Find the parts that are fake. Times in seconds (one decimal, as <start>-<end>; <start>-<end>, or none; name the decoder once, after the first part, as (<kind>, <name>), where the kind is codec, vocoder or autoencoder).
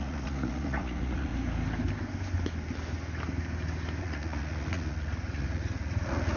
0.0-1.3 (vocoder, Vocos); 4.0-6.4